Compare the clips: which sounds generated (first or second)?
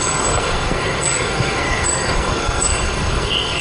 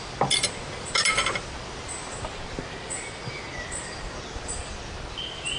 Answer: first